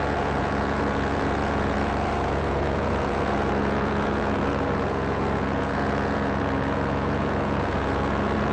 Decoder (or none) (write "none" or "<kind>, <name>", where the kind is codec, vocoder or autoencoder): vocoder, Vocos